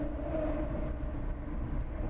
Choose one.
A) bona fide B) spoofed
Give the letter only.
A